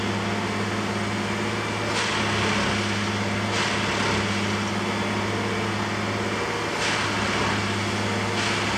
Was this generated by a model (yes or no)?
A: no